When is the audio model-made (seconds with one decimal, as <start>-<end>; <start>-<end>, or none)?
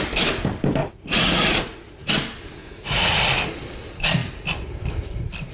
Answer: 0.8-2.1; 2.6-3.2